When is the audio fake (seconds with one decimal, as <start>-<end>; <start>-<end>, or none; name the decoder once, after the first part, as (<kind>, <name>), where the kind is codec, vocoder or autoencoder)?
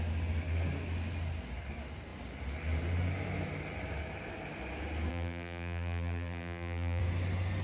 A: 5.1-7.0 (vocoder, BigVGAN v2)